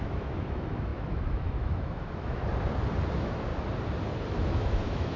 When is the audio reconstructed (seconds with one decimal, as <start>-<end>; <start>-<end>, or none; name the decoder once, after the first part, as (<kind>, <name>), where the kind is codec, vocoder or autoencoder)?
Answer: 0.0-2.4 (autoencoder, DAC-VAE); 3.1-3.5; 4.3-5.2